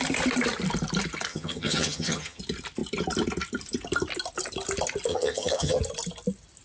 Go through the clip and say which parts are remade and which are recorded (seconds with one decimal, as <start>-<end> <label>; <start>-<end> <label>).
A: 0.0-1.3 recorded; 1.3-2.4 remade; 2.4-5.1 recorded; 5.1-5.8 remade; 5.8-6.6 recorded